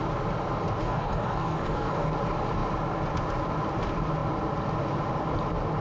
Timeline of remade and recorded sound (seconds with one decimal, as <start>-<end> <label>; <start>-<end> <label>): 0.0-0.8 recorded; 0.8-2.1 remade; 2.1-5.8 recorded